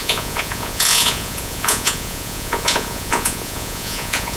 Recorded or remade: remade